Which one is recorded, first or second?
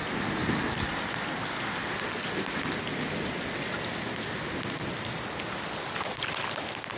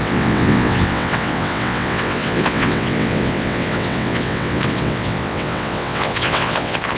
first